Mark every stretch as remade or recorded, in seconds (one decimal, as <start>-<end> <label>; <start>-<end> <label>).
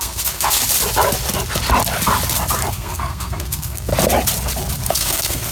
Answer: 0.0-0.6 remade; 0.6-2.7 recorded; 2.7-3.9 remade; 3.9-4.9 recorded; 4.9-5.5 remade